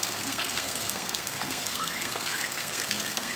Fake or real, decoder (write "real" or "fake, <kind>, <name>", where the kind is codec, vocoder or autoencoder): fake, codec, SNAC